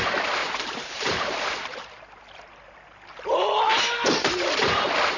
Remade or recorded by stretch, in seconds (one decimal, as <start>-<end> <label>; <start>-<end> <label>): 0.0-0.4 recorded; 0.4-2.0 remade; 2.0-3.7 recorded; 3.7-4.5 remade; 4.5-5.2 recorded